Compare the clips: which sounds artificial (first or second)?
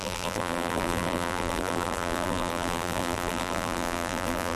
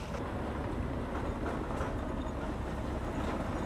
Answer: first